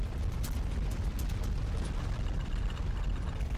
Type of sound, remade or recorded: recorded